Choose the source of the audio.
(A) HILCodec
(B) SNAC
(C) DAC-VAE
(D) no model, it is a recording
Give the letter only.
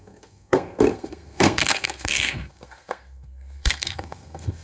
B